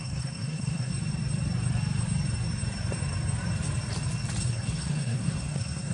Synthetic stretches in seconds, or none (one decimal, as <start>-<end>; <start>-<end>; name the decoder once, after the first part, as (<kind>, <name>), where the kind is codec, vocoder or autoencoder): 0.0-0.9 (codec, SNAC); 4.4-5.9